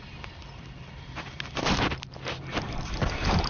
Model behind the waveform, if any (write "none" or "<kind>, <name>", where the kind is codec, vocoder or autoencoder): none